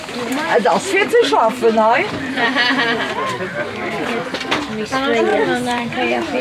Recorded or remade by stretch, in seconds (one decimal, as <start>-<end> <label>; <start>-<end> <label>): 0.0-1.2 recorded; 1.2-2.3 remade; 2.3-5.3 recorded; 5.3-6.4 remade